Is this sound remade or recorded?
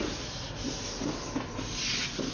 recorded